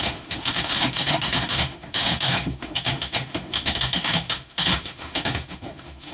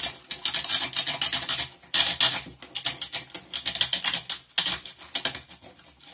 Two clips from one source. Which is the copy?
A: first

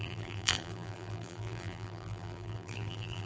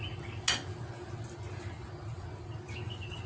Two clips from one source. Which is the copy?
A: first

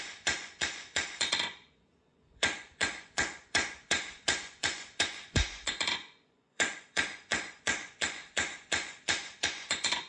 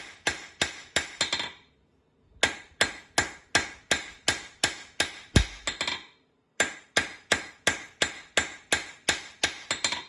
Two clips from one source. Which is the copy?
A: first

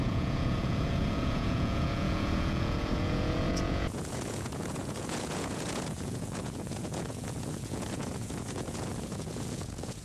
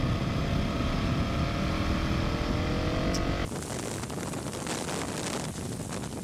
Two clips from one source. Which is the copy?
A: first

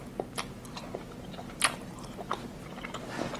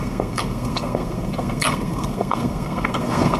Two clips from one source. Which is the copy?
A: second